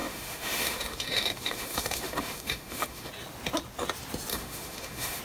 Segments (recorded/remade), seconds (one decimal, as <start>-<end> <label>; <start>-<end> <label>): 0.0-3.1 remade; 3.1-4.3 recorded; 4.3-5.2 remade